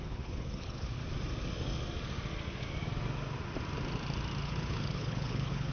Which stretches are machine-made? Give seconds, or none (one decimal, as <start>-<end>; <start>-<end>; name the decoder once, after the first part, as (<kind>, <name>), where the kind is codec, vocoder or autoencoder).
0.0-1.0 (codec, HILCodec); 4.4-5.7

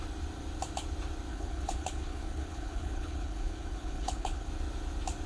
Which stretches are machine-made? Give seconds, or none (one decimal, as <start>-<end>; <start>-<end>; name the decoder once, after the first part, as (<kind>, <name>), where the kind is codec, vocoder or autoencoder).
1.3-4.5 (codec, HILCodec)